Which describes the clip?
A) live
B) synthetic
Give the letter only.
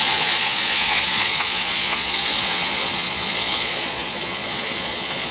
B